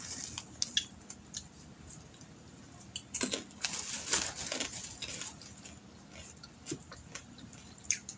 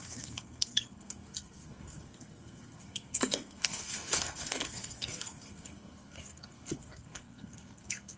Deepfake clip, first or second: second